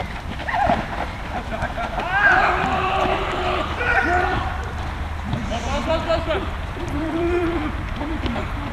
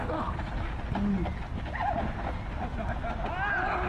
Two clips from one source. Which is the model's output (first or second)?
first